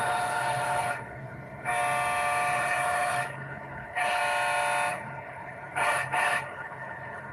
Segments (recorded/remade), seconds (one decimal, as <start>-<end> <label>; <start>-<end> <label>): 0.0-1.7 remade; 1.7-2.5 recorded; 2.5-4.2 remade; 4.2-4.9 recorded; 4.9-7.3 remade